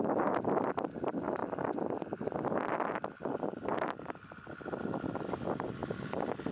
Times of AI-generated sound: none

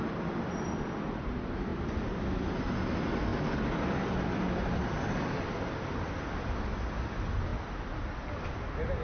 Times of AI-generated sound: 3.3-4.8 (vocoder, BigVGAN v2)

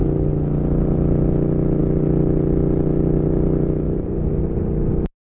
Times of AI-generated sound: none

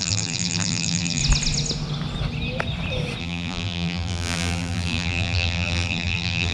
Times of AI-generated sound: 0.0-1.2 (vocoder, BigVGAN v2); 3.2-6.5